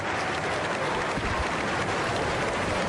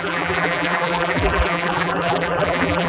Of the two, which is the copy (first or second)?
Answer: second